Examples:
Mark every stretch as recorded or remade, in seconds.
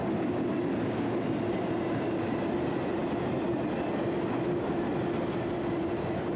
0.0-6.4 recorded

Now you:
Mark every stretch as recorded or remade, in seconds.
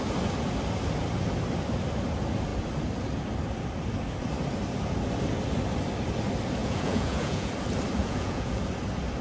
0.0-6.6 recorded; 6.6-7.5 remade; 7.5-8.0 recorded; 8.0-8.6 remade; 8.6-9.2 recorded